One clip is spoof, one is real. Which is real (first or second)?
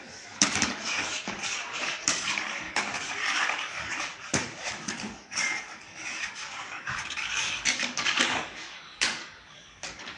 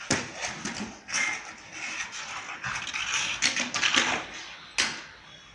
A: second